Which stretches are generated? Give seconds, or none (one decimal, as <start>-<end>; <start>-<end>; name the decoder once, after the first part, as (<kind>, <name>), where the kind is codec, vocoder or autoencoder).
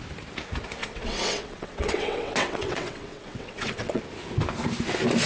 0.8-4.0 (vocoder, WaveNeXt)